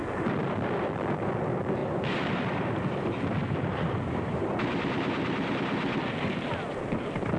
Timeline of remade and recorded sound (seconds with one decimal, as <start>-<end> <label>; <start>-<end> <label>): 0.0-1.8 recorded; 1.8-6.0 remade; 6.0-7.4 recorded